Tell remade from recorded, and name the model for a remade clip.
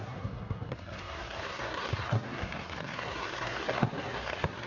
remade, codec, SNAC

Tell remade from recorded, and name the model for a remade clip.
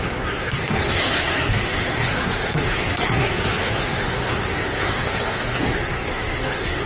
remade, codec, SNAC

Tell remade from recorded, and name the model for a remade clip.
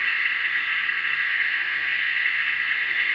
remade, codec, SNAC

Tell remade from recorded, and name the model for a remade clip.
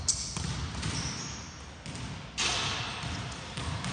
recorded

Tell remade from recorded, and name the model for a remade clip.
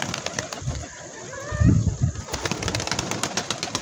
recorded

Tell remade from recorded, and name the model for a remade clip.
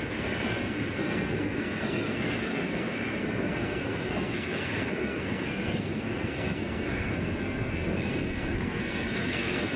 remade, codec, SNAC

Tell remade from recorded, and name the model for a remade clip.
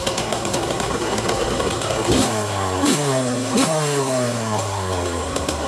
remade, codec, SNAC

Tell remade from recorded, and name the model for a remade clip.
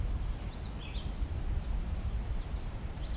recorded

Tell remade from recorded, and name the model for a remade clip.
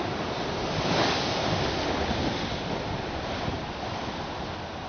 recorded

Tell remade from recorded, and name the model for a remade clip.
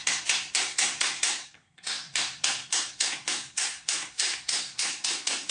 remade, codec, SNAC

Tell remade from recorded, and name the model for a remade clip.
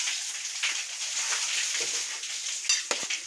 recorded